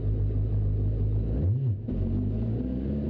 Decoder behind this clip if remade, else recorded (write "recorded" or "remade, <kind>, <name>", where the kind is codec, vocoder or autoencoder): recorded